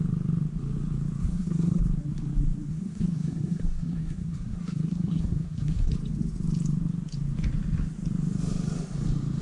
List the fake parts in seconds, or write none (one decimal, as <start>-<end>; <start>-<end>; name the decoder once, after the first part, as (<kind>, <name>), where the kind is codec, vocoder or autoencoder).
1.2-1.8 (codec, SNAC); 2.7-5.9